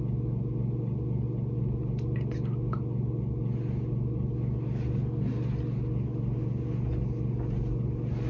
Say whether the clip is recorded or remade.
recorded